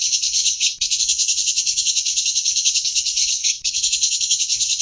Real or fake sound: fake